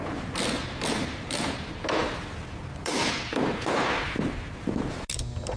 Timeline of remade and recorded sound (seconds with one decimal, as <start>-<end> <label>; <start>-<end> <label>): 0.0-5.6 recorded